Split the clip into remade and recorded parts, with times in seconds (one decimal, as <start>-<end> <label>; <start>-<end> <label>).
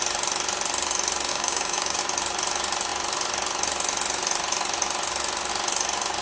0.0-1.3 recorded; 1.3-2.0 remade; 2.0-6.2 recorded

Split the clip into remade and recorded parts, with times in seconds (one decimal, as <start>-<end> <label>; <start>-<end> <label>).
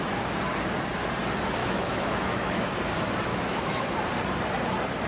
0.0-1.6 recorded; 1.6-2.7 remade; 2.7-3.3 recorded; 3.3-3.9 remade; 3.9-5.1 recorded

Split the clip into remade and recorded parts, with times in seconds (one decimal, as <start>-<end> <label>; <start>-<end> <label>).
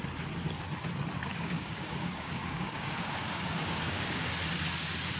0.0-1.3 recorded; 1.3-4.2 remade; 4.2-5.2 recorded